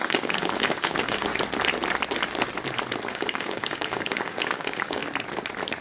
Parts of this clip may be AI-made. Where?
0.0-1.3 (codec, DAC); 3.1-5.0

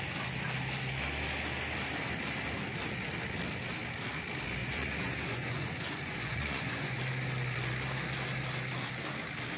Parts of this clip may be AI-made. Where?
4.6-7.0 (vocoder, Vocos)

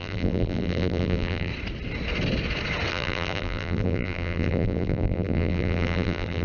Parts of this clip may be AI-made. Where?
0.0-1.5 (vocoder, BigVGAN v2); 2.9-6.4

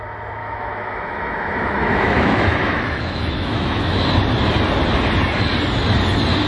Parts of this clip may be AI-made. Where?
0.4-4.0 (autoencoder, DAC-VAE)

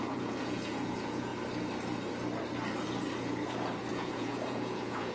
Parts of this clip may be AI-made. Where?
0.0-1.3 (vocoder, Vocos); 3.9-5.1

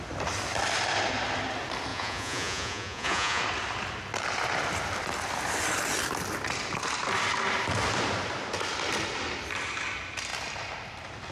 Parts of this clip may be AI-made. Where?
1.9-3.4 (vocoder, Vocos)

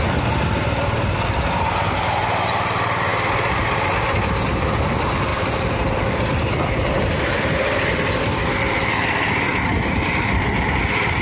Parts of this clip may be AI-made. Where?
none

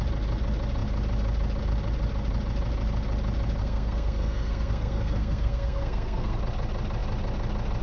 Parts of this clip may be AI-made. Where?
3.6-6.4 (codec, SNAC)